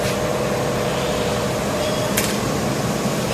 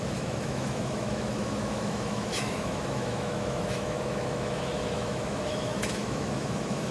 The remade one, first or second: second